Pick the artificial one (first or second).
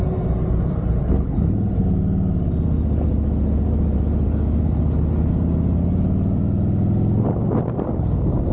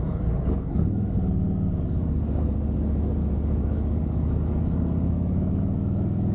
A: second